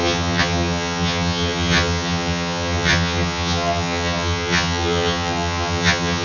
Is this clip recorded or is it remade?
remade